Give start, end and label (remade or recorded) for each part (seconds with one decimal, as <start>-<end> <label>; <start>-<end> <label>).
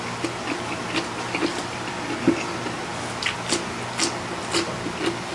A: 0.0-5.3 recorded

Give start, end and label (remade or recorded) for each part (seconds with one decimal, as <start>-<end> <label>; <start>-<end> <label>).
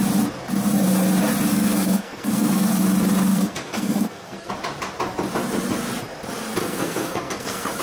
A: 0.0-1.5 recorded; 1.5-2.7 remade; 2.7-3.3 recorded; 3.3-4.5 remade; 4.5-6.6 recorded; 6.6-7.8 remade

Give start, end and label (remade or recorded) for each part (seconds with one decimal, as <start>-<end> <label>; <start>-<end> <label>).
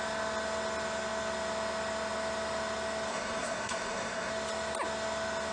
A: 0.0-3.1 recorded; 3.1-4.3 remade; 4.3-5.5 recorded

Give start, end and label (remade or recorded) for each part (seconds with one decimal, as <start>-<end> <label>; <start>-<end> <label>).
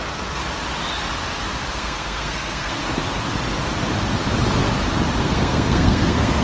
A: 0.0-0.4 remade; 0.4-1.7 recorded; 1.7-2.8 remade; 2.8-5.2 recorded; 5.2-6.4 remade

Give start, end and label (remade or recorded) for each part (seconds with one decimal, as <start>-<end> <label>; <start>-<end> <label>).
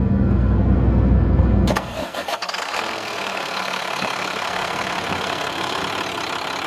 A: 0.0-5.8 remade; 5.8-6.7 recorded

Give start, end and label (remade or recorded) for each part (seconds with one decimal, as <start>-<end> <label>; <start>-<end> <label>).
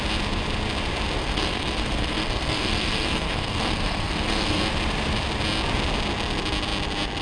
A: 0.0-1.2 recorded; 1.2-4.6 remade; 4.6-7.2 recorded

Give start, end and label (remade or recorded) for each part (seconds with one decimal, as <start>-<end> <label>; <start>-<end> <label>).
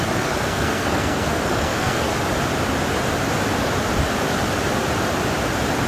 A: 0.0-2.1 remade; 2.1-5.9 recorded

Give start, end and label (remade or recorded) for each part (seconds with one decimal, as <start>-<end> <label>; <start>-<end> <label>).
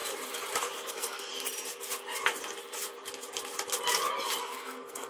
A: 0.0-0.9 recorded; 0.9-1.3 remade; 1.3-4.4 recorded; 4.4-5.1 remade